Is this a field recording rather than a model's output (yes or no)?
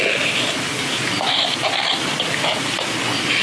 yes